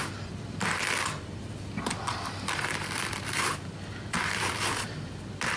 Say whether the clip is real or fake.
fake